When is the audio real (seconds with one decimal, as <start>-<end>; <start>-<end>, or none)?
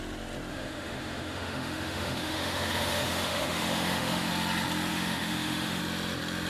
0.0-0.5; 4.3-4.9; 5.8-6.5